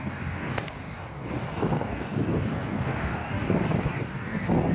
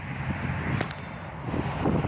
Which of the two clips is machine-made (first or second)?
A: first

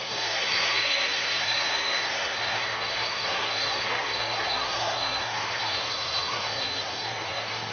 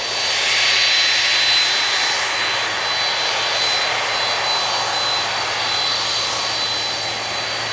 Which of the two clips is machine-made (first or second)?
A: first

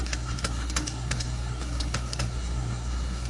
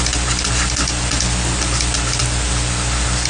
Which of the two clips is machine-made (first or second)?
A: first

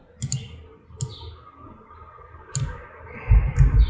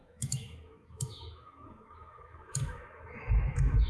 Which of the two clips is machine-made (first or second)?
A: second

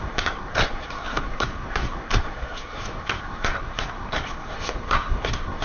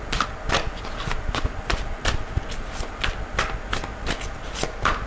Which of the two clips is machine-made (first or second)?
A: first